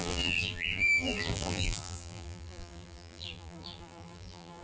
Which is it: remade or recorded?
remade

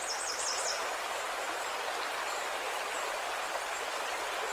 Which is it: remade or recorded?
recorded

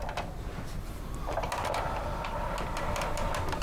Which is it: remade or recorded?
recorded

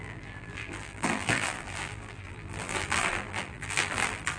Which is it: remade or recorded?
remade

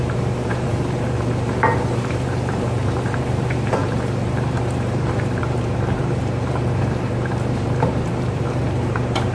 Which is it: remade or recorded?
remade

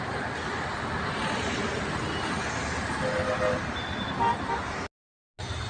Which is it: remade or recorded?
recorded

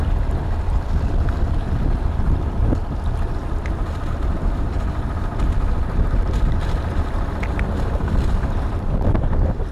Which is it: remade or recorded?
remade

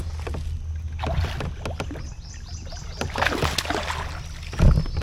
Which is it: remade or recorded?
recorded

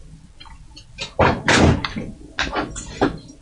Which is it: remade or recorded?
recorded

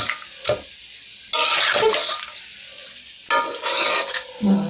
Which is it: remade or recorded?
recorded